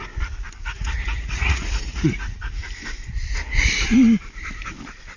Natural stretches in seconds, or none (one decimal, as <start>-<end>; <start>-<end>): 0.0-0.6; 2.6-5.2